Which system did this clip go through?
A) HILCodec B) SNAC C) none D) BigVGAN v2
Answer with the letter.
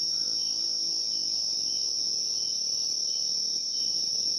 C